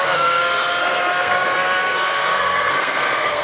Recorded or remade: remade